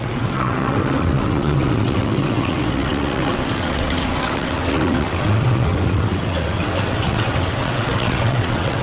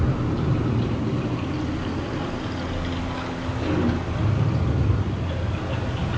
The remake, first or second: first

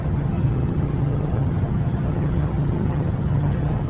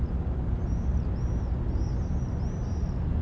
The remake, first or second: first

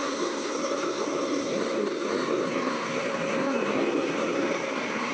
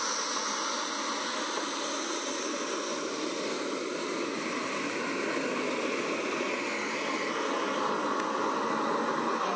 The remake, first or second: first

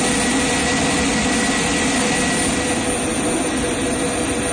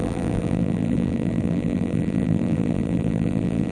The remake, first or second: second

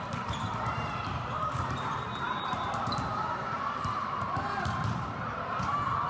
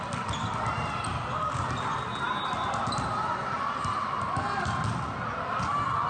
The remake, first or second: first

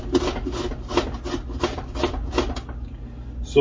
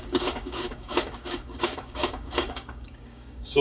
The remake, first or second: second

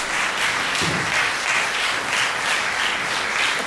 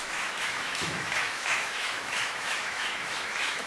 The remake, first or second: second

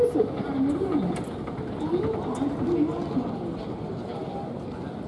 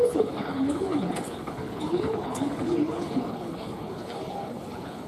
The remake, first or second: second